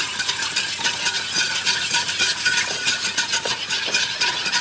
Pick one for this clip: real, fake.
fake